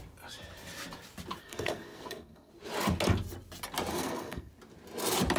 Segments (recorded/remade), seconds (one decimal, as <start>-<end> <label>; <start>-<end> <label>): 0.0-1.4 recorded; 1.4-2.5 remade; 2.5-3.9 recorded; 3.9-4.5 remade; 4.5-5.4 recorded